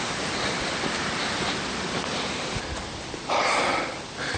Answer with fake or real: real